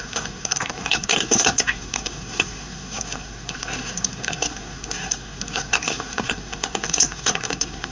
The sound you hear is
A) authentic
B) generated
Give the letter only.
B